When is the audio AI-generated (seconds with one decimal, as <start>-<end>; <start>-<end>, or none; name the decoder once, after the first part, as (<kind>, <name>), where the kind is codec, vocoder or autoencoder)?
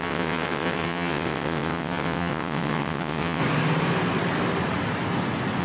0.0-3.4 (vocoder, WaveNeXt)